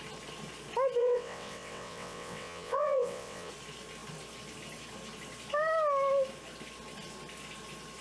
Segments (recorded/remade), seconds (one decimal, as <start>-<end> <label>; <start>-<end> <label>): 0.0-1.0 recorded; 1.0-3.5 remade; 3.5-8.0 recorded